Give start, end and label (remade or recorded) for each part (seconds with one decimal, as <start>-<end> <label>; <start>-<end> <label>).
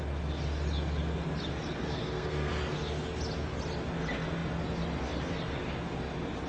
0.0-1.8 recorded; 1.8-2.5 remade; 2.5-6.5 recorded